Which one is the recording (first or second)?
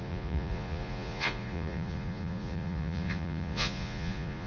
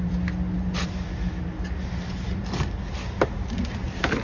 second